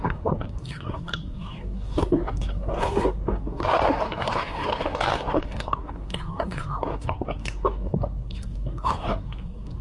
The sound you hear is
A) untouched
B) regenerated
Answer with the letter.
B